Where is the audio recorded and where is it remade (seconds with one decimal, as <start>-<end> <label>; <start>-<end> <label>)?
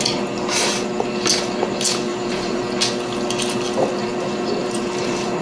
0.0-2.1 recorded; 2.1-2.6 remade; 2.6-4.6 recorded; 4.6-5.4 remade